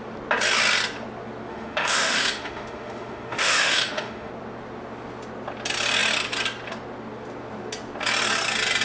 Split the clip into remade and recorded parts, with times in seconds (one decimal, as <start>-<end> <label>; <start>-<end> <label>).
0.0-1.5 recorded; 1.5-4.3 remade; 4.3-8.8 recorded